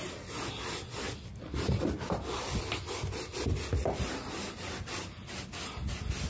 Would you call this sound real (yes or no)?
yes